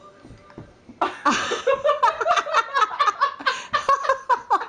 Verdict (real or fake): real